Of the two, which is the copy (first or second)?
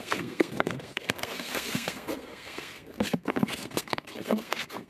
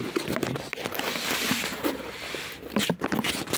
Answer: first